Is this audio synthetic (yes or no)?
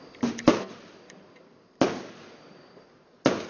no